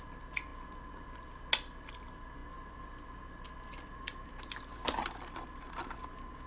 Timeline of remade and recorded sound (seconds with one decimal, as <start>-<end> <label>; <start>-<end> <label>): 0.0-6.5 recorded

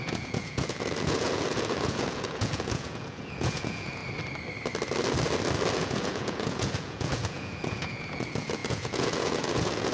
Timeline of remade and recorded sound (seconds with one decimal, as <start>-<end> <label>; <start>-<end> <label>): 0.0-4.0 remade; 4.0-5.7 recorded; 5.7-9.9 remade

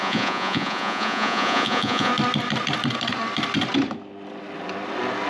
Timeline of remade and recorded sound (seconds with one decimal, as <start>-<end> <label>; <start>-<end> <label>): 0.0-2.1 remade; 2.1-5.3 recorded

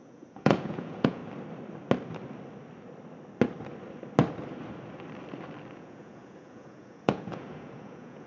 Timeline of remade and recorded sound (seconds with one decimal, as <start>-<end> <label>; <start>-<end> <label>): 0.0-1.2 remade; 1.2-5.7 recorded; 5.7-8.3 remade

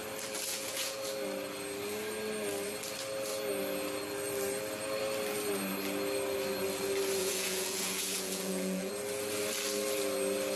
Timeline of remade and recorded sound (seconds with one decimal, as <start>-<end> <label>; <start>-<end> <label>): 0.0-0.5 recorded; 0.5-1.0 remade; 1.0-7.2 recorded; 7.2-8.9 remade; 8.9-10.6 recorded

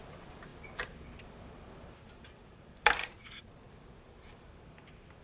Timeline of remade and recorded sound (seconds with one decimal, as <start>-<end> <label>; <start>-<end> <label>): 0.0-3.0 recorded; 3.0-3.7 remade; 3.7-5.2 recorded

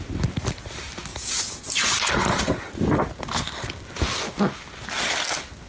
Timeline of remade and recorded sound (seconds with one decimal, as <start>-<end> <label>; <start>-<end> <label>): 0.0-1.1 recorded; 1.1-1.7 remade; 1.7-5.7 recorded